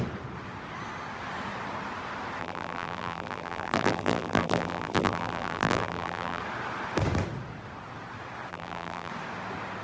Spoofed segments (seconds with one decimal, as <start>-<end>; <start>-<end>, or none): 2.4-6.4; 8.5-9.1